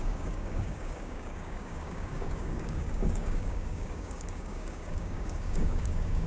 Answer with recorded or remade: remade